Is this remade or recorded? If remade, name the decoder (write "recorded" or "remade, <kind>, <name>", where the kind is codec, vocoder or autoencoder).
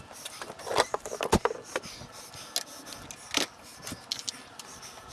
recorded